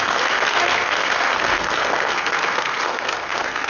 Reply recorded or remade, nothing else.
remade